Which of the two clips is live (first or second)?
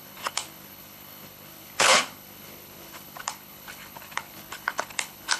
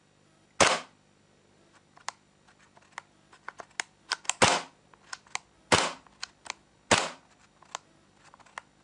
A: second